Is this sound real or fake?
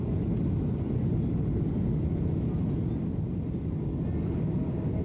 real